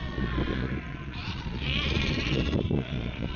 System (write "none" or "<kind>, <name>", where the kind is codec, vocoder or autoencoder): vocoder, Vocos